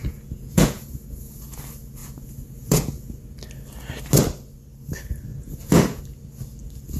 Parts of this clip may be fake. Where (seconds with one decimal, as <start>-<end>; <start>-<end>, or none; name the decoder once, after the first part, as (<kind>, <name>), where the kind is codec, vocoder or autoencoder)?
0.0-1.6 (vocoder, Vocos); 2.0-3.1; 5.3-6.0